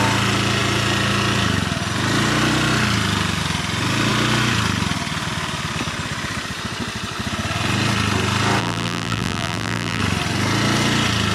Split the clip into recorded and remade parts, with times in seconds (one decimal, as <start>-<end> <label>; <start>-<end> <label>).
0.0-8.6 recorded; 8.6-10.0 remade; 10.0-11.3 recorded